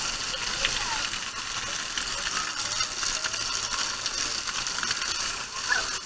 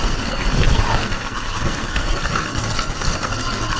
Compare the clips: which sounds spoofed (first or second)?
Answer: second